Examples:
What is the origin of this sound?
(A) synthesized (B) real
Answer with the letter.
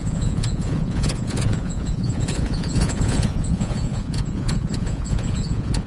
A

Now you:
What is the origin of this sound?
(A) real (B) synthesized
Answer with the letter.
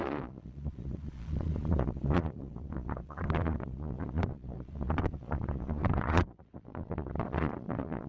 B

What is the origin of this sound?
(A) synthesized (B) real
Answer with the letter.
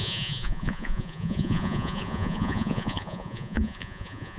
A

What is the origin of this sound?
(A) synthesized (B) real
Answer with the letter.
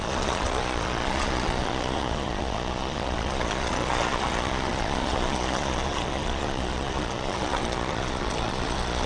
A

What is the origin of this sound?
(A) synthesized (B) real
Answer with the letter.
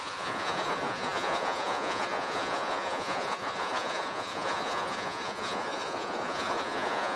A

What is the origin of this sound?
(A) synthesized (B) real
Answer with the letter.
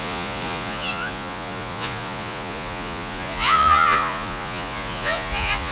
A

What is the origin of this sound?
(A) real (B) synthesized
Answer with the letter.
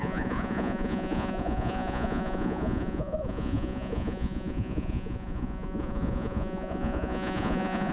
B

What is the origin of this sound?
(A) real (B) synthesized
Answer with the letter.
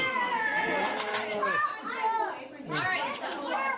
A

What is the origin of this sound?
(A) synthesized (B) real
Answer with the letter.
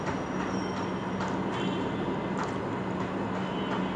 B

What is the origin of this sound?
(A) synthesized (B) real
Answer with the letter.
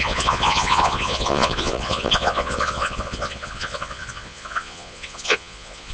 A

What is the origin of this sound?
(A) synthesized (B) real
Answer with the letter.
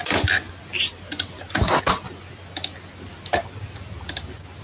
B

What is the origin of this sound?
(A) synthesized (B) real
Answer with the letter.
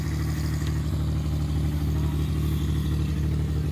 B